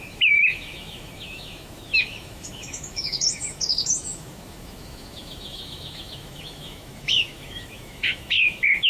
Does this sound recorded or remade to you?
remade